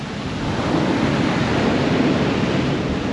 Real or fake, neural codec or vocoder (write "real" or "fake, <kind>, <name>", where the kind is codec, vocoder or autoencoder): real